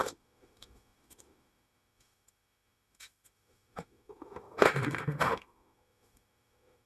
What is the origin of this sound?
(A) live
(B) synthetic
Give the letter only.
B